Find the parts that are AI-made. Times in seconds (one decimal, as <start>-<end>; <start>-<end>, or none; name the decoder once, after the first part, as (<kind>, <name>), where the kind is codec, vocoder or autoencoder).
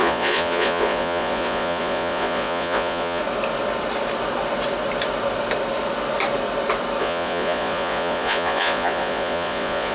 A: 0.0-3.2 (vocoder, Vocos); 7.0-9.9